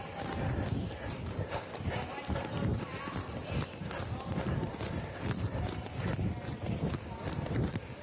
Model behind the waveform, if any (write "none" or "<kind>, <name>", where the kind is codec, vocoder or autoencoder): none